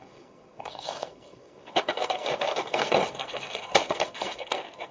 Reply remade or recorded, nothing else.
remade